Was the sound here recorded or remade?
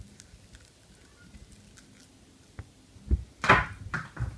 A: recorded